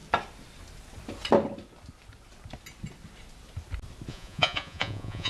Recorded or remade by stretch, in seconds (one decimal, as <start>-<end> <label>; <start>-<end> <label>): 0.0-4.1 recorded; 4.1-5.3 remade